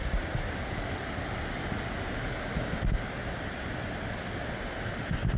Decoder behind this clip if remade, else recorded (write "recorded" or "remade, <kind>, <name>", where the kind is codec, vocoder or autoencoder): recorded